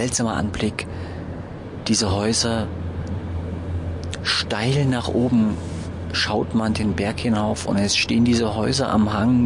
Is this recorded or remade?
recorded